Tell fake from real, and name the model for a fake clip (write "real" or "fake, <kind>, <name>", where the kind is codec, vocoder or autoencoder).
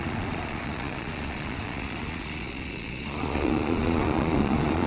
fake, vocoder, Vocos